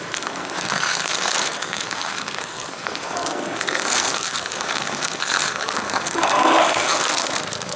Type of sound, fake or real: fake